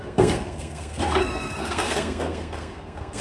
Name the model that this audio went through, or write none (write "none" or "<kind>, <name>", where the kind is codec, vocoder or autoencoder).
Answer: codec, SNAC